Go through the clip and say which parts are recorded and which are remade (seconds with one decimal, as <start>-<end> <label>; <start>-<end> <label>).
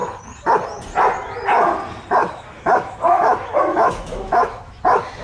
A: 0.0-2.2 recorded; 2.2-4.8 remade; 4.8-5.2 recorded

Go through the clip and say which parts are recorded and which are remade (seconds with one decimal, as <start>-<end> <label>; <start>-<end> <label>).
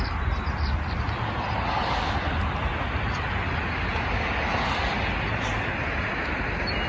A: 0.0-6.9 recorded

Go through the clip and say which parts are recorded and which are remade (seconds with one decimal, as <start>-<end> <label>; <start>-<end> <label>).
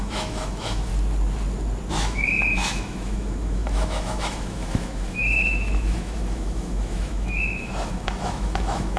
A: 0.0-0.9 remade; 0.9-1.9 recorded; 1.9-9.0 remade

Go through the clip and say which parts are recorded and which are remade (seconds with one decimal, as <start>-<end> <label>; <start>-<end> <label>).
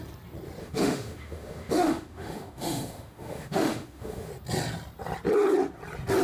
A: 0.0-0.6 recorded; 0.6-4.3 remade; 4.3-6.2 recorded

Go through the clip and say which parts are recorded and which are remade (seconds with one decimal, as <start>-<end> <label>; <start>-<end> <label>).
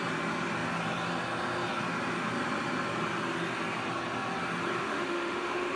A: 0.0-4.8 recorded; 4.8-5.8 remade